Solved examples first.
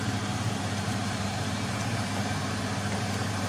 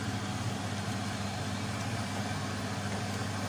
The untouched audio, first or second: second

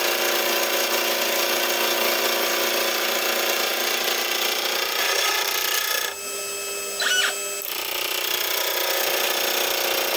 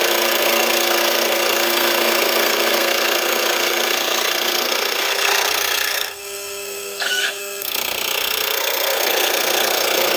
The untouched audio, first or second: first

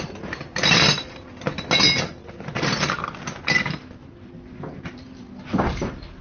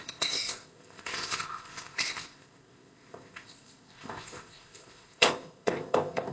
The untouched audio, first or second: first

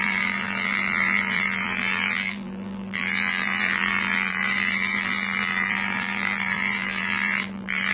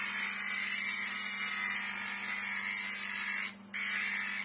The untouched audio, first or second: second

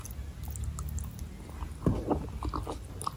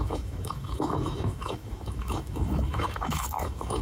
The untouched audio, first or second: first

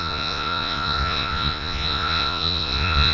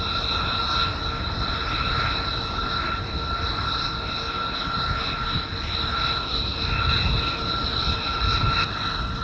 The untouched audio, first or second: second